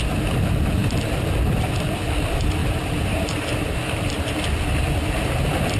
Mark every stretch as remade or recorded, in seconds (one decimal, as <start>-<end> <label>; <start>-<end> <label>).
0.0-2.6 recorded; 2.6-4.0 remade; 4.0-5.8 recorded